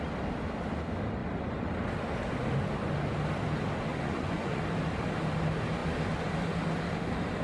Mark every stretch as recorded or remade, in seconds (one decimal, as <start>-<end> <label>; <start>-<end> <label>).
0.0-3.9 recorded; 3.9-4.6 remade; 4.6-7.4 recorded